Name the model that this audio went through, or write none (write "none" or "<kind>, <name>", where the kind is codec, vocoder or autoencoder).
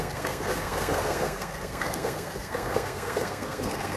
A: codec, SNAC